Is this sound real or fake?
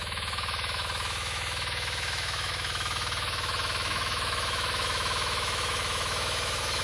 fake